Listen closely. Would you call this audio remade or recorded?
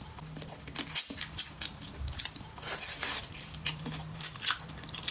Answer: recorded